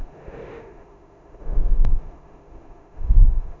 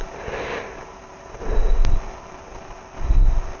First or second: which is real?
second